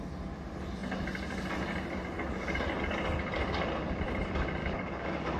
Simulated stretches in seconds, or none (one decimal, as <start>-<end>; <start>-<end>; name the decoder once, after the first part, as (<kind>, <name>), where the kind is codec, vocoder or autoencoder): 4.6-5.4 (codec, DAC)